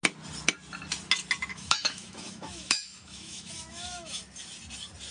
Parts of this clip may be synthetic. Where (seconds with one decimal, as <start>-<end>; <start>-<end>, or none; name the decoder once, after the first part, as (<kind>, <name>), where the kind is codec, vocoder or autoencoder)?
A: 1.5-4.2 (autoencoder, DAC-VAE)